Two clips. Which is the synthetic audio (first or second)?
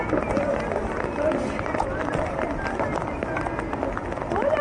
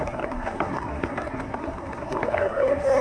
second